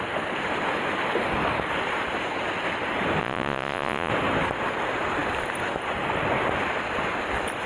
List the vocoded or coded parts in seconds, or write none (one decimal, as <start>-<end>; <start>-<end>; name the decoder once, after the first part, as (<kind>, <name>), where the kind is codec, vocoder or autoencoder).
3.2-4.1 (vocoder, Vocos)